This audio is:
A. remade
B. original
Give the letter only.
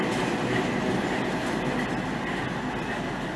B